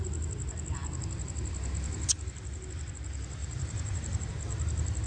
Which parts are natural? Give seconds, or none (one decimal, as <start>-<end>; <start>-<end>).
0.0-3.4; 4.3-5.1